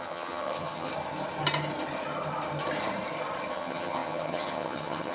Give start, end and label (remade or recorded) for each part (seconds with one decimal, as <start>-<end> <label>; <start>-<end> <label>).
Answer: 0.0-0.9 remade; 0.9-3.5 recorded; 3.5-5.1 remade